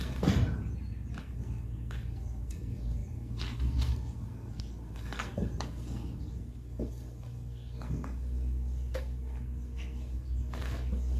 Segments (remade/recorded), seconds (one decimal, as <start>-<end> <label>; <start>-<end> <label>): 0.0-0.4 remade; 0.4-1.2 recorded; 1.2-11.2 remade

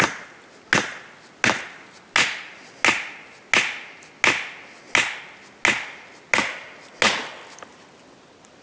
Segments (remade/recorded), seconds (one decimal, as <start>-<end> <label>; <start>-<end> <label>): 0.0-8.6 recorded

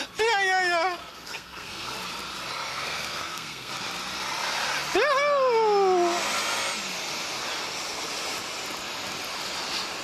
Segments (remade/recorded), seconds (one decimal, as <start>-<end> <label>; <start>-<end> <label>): 0.0-1.0 recorded; 1.0-1.9 remade; 1.9-2.7 recorded; 2.7-3.7 remade; 3.7-10.0 recorded

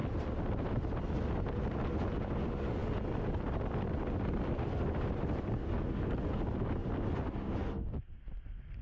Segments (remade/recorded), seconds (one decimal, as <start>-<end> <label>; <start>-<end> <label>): 0.0-8.8 recorded

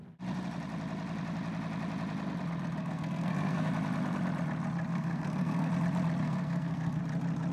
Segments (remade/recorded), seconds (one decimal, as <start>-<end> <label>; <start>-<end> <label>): 0.0-2.8 recorded; 2.8-3.7 remade; 3.7-4.9 recorded; 4.9-5.7 remade; 5.7-6.2 recorded; 6.2-7.0 remade; 7.0-7.5 recorded

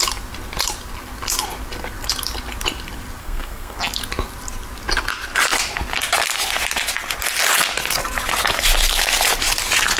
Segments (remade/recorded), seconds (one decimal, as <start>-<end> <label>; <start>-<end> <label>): 0.0-3.2 recorded; 3.2-3.8 remade; 3.8-10.0 recorded